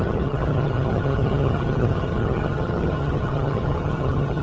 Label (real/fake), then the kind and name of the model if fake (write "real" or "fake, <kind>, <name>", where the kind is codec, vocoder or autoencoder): fake, vocoder, HiFi-GAN